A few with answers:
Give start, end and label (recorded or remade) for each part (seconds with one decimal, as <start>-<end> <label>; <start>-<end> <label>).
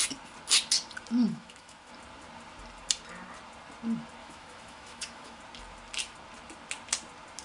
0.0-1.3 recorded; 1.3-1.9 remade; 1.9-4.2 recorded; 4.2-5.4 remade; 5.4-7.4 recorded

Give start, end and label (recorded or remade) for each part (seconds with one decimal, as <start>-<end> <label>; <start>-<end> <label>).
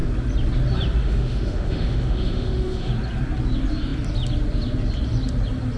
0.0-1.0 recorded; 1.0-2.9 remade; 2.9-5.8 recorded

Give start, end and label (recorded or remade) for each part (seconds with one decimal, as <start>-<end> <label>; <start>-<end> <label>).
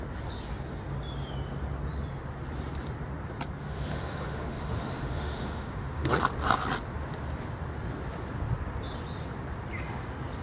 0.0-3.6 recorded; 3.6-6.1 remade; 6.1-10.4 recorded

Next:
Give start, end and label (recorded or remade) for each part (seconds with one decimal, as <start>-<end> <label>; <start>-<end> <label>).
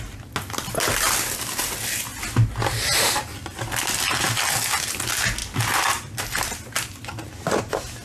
0.0-8.0 recorded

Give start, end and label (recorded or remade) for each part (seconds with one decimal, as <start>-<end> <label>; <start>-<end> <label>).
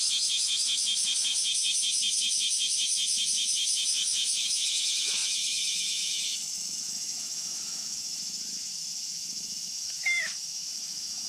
0.0-11.3 remade